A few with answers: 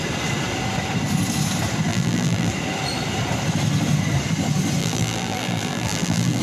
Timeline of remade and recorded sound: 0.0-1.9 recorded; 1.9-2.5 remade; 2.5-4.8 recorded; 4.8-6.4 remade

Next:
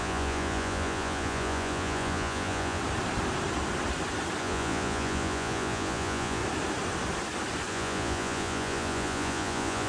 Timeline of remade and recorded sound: 0.0-2.8 remade; 2.8-4.4 recorded; 4.4-6.4 remade; 6.4-7.7 recorded; 7.7-9.9 remade

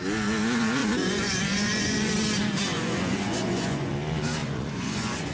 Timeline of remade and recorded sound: 0.0-0.8 recorded; 0.8-2.1 remade; 2.1-2.7 recorded; 2.7-3.9 remade; 3.9-4.4 recorded; 4.4-5.3 remade

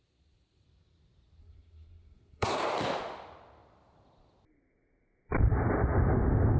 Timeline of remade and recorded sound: 0.0-1.4 recorded; 1.4-2.6 remade; 2.6-6.6 recorded

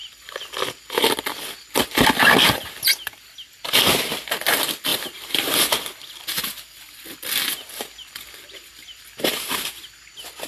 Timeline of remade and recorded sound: 0.0-3.9 remade; 3.9-4.9 recorded; 4.9-9.7 remade; 9.7-10.5 recorded

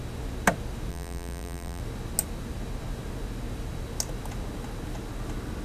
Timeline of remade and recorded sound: 0.0-0.9 recorded; 0.9-1.8 remade; 1.8-5.6 recorded